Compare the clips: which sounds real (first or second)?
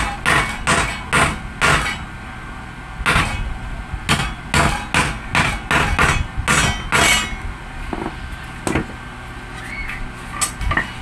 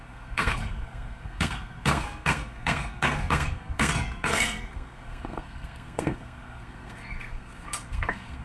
first